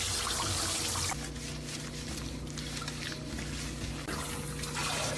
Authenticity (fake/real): real